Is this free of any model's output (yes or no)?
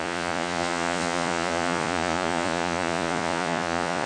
no